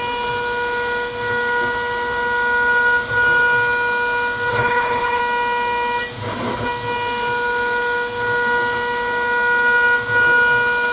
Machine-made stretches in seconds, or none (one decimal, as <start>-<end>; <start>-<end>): 4.5-5.2